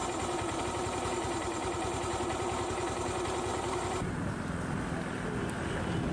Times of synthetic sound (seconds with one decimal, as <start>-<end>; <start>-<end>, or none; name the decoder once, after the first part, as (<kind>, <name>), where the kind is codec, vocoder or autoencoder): 3.5-4.4 (vocoder, BigVGAN v2)